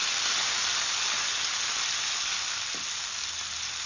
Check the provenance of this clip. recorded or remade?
recorded